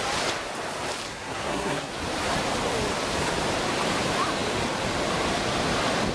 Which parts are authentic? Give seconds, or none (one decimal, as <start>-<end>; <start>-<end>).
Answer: 0.0-1.1; 1.9-6.1